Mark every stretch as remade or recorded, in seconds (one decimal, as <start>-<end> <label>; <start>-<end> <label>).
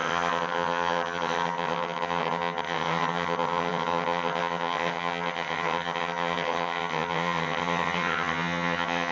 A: 0.0-9.1 remade